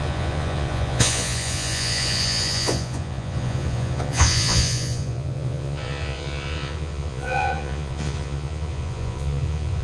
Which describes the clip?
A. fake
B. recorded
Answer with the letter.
A